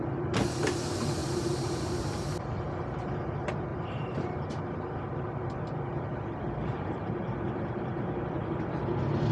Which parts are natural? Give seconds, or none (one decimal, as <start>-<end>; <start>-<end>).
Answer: 0.0-1.2; 2.3-3.7; 8.3-9.3